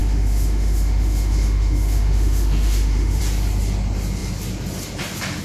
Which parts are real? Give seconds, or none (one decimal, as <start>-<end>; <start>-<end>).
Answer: 3.2-5.4